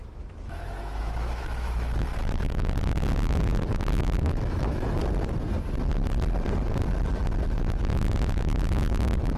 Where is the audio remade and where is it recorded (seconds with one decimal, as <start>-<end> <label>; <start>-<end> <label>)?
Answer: 0.0-5.0 remade; 5.0-7.6 recorded; 7.6-9.4 remade